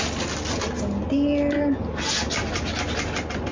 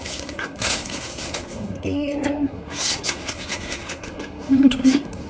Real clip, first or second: first